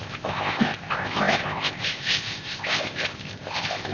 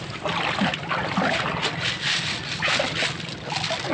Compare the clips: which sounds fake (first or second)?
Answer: first